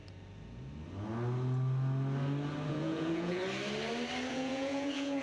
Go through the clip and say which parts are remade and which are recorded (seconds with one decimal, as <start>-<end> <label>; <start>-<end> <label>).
0.0-2.7 recorded; 2.7-3.4 remade; 3.4-4.3 recorded; 4.3-5.2 remade